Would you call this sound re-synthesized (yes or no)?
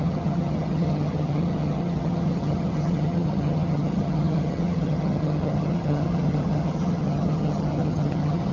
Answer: yes